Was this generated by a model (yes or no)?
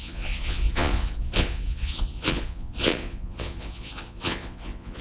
yes